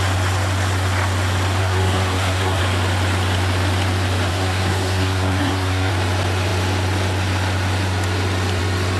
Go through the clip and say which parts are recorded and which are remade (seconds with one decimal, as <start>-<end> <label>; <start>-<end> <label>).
0.0-1.6 recorded; 1.6-2.6 remade; 2.6-4.3 recorded; 4.3-5.9 remade; 5.9-9.0 recorded